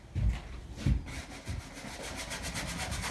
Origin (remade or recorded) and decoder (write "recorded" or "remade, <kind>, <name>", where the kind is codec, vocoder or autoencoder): recorded